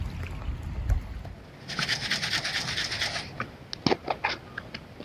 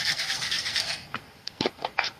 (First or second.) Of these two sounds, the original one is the first